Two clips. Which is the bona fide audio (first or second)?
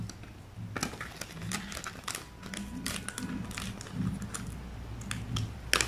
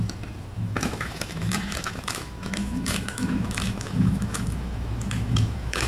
first